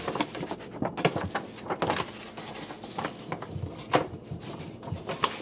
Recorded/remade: recorded